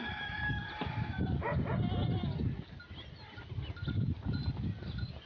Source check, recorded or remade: recorded